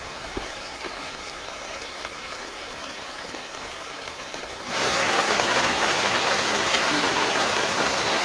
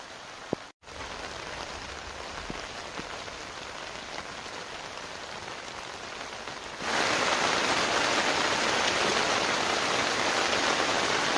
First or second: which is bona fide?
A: second